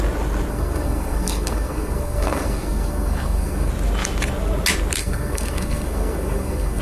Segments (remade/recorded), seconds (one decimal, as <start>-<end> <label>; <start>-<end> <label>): 0.0-0.5 recorded; 0.5-3.7 remade; 3.7-5.0 recorded; 5.0-6.8 remade